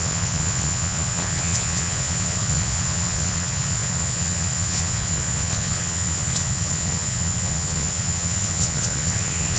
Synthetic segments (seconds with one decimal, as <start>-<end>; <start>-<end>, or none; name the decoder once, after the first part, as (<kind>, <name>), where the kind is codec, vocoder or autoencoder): 0.0-9.6 (vocoder, Vocos)